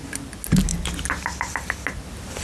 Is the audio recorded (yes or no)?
yes